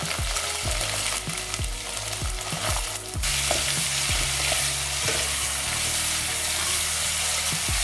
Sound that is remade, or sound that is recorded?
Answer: recorded